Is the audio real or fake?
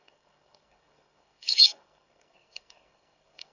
fake